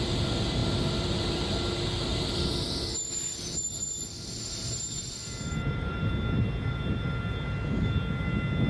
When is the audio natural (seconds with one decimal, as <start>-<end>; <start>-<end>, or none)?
0.0-0.6; 1.5-2.1; 6.1-8.7